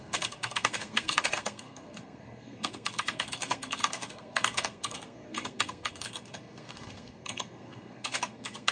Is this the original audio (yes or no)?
no